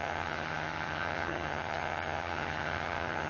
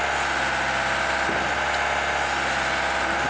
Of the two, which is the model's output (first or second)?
first